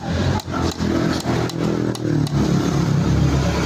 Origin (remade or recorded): recorded